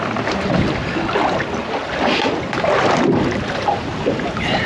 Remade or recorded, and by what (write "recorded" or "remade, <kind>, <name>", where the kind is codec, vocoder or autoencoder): recorded